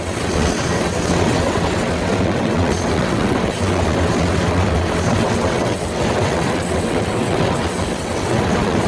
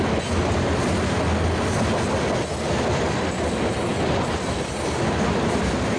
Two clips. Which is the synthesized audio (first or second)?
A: first